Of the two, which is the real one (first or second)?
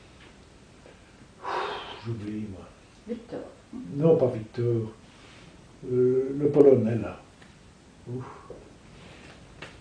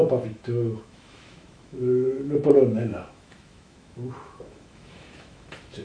first